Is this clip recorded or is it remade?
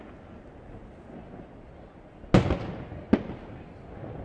recorded